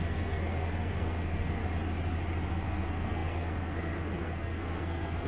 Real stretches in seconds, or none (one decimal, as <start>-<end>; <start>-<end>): 1.6-2.5